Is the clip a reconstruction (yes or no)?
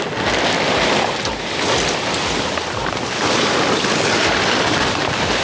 no